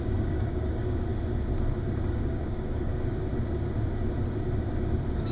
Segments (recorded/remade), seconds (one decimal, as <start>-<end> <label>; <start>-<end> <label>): 0.0-1.1 remade; 1.1-2.1 recorded; 2.1-3.3 remade; 3.3-5.3 recorded